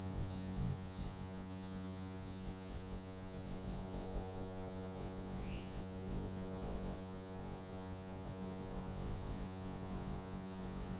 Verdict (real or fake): fake